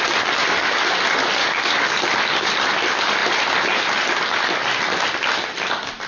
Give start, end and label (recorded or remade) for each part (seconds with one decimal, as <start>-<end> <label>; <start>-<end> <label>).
0.0-0.4 recorded; 0.4-1.0 remade; 1.0-1.4 recorded; 1.4-1.9 remade; 1.9-6.1 recorded